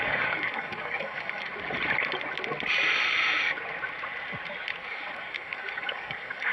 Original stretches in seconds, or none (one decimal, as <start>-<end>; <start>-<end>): 1.5-4.9